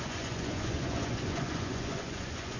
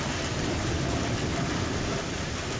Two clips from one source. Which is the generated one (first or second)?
first